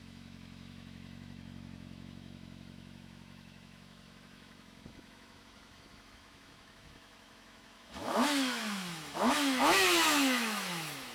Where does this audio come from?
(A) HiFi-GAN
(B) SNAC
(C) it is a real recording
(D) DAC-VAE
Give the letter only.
D